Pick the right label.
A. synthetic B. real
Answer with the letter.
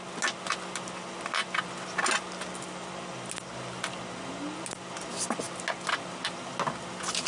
B